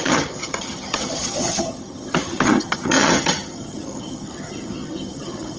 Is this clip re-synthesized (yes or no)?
yes